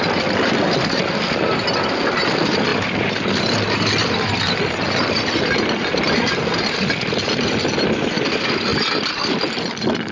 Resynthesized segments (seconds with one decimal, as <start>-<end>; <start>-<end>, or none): none